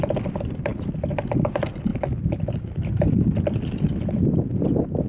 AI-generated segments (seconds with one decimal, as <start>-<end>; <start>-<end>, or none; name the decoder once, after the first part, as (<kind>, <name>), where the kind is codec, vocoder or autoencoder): none